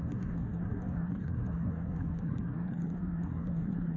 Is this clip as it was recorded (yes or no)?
no